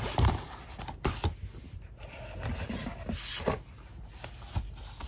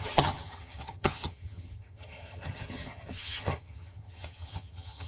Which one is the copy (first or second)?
second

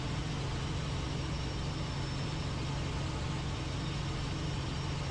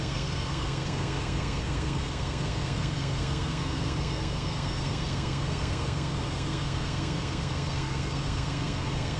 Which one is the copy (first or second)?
second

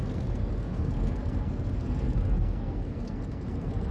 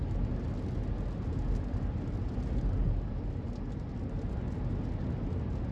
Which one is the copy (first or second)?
first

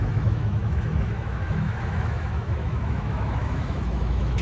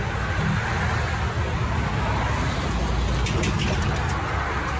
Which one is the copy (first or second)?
first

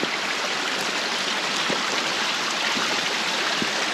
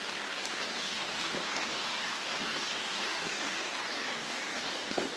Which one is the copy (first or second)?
second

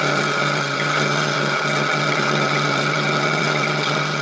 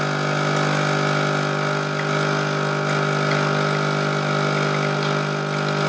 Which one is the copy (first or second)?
first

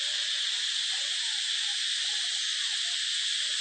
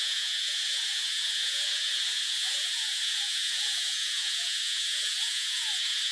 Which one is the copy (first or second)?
second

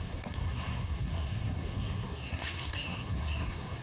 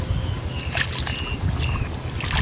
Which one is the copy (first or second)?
first